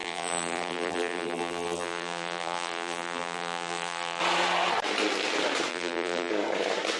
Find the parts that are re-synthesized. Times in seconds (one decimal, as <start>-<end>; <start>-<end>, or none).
0.0-4.2; 5.7-6.3